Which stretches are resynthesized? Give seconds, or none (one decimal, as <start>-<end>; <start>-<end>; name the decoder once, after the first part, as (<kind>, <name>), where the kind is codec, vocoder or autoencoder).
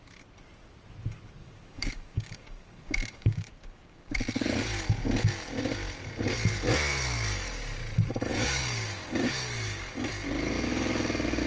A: 1.4-4.1 (codec, DAC); 8.3-9.9